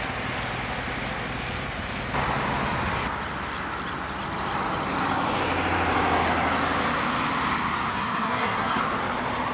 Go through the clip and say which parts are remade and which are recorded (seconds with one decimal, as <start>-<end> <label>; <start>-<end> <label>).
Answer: 0.0-7.9 recorded; 7.9-8.8 remade; 8.8-9.5 recorded